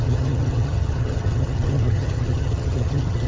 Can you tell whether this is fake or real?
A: fake